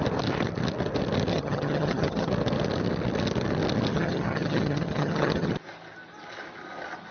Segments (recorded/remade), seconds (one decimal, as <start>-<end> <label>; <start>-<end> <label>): 0.0-1.3 recorded; 1.3-2.3 remade; 2.3-3.9 recorded; 3.9-5.5 remade; 5.5-7.1 recorded